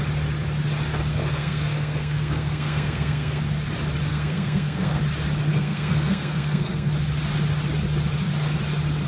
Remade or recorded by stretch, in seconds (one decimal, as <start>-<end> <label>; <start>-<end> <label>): 0.0-1.1 recorded; 1.1-3.4 remade; 3.4-4.1 recorded; 4.1-5.0 remade; 5.0-5.5 recorded; 5.5-6.9 remade; 6.9-9.1 recorded